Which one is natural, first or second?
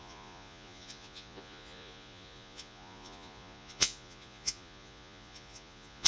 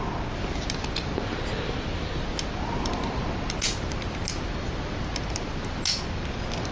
second